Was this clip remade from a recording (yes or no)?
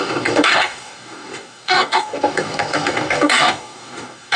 yes